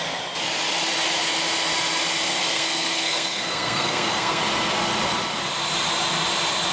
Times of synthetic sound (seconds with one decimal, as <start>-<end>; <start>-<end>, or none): 2.4-4.4